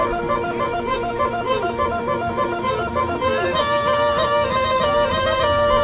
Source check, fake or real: real